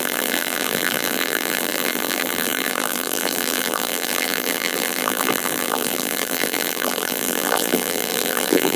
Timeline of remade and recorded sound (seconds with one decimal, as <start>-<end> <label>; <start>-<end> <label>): 0.0-8.8 remade